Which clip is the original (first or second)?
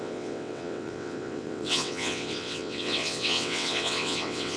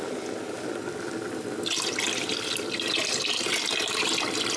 second